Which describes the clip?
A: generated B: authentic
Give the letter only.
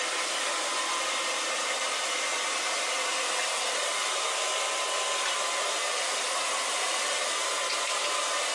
B